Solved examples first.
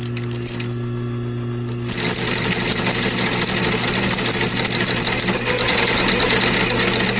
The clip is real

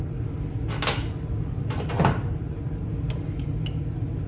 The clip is real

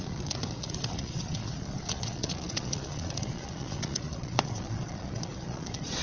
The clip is fake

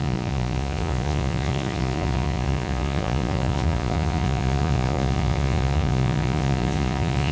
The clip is fake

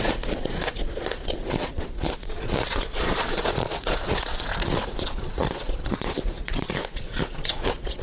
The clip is fake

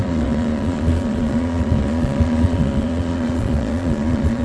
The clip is fake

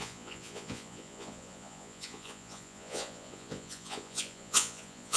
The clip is fake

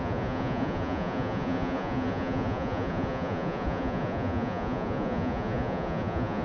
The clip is fake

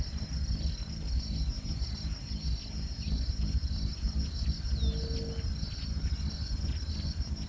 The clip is real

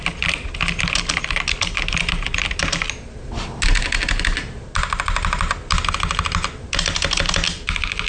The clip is real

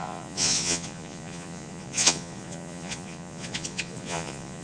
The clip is fake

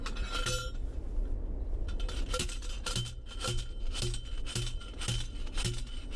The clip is real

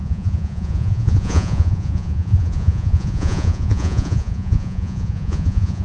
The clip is fake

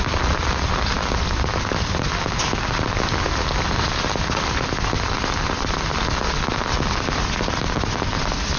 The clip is real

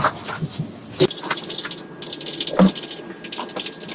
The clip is real